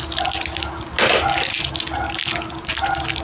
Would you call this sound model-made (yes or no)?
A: no